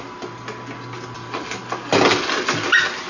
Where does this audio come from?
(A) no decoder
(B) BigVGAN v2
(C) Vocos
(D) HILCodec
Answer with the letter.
A